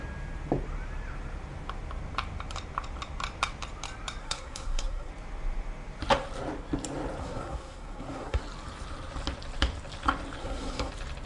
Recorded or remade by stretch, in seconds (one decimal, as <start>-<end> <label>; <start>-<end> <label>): 0.0-4.2 recorded; 4.2-5.1 remade; 5.1-7.2 recorded; 7.2-8.4 remade; 8.4-10.4 recorded; 10.4-10.9 remade; 10.9-11.3 recorded